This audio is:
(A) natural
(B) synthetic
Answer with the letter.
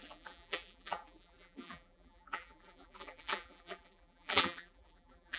B